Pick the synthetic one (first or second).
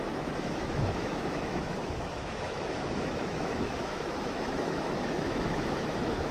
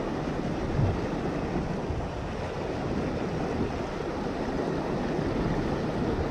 first